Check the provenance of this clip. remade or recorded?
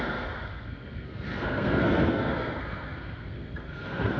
remade